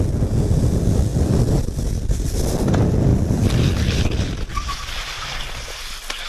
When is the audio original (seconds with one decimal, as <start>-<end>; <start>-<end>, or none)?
0.0-3.1; 4.0-6.3